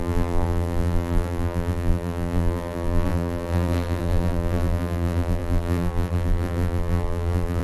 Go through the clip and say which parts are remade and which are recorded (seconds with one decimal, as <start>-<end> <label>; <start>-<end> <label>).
0.0-7.6 remade